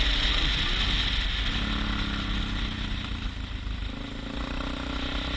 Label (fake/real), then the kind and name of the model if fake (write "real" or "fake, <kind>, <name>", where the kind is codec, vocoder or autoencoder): real